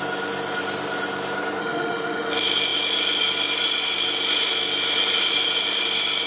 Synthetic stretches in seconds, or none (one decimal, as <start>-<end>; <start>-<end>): 1.6-2.3